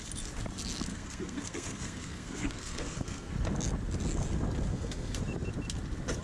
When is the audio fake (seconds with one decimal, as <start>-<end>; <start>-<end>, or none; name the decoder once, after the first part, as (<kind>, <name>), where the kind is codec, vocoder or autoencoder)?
0.9-3.3 (codec, SNAC); 4.7-5.2